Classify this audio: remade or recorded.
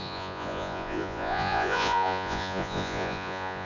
remade